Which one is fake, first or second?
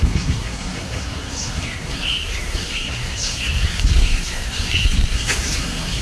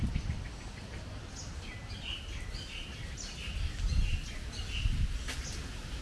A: first